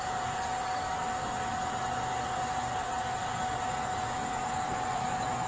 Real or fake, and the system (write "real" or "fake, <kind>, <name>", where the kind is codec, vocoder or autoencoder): real